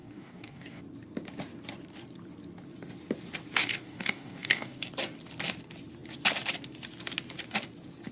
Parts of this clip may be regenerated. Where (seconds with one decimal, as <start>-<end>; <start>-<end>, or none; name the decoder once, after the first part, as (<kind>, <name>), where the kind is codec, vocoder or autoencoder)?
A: 0.0-0.8 (codec, DAC); 3.6-4.9